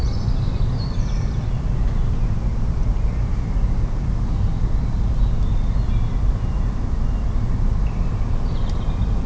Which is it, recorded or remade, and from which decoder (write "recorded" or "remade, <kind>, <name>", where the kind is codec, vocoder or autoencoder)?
recorded